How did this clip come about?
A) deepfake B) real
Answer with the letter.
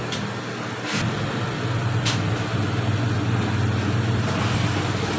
B